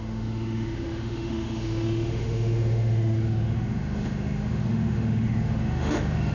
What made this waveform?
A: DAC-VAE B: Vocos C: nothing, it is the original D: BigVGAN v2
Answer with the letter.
A